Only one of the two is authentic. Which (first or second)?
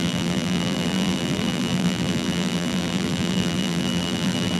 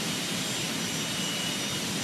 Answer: second